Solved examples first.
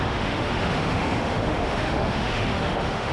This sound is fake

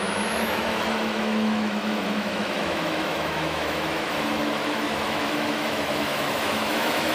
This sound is fake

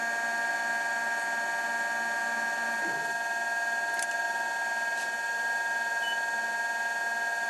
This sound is real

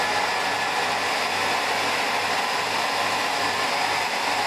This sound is real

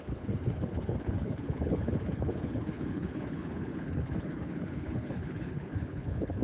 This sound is fake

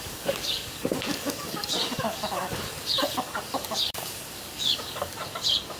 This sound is fake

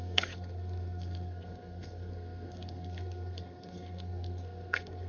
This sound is fake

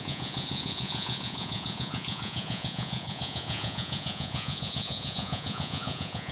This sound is fake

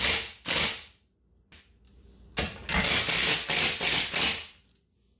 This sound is real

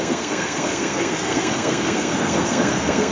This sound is fake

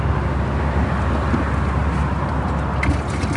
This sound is real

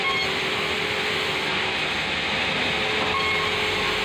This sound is real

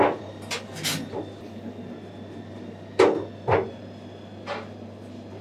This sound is real